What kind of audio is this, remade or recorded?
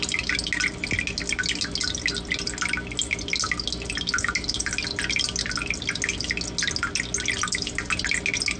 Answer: recorded